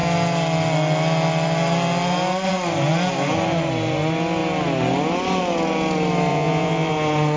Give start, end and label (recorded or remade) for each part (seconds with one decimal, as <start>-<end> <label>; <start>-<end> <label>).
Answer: 0.0-6.3 recorded; 6.3-6.9 remade; 6.9-7.4 recorded